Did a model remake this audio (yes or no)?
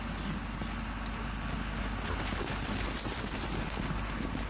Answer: no